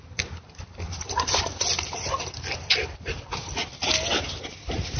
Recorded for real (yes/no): yes